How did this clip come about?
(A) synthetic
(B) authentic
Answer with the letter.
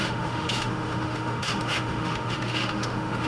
A